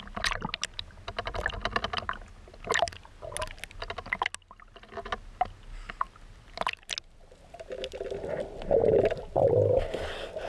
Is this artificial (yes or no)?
no